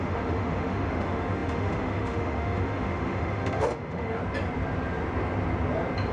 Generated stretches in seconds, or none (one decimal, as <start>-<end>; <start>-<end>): 0.0-4.2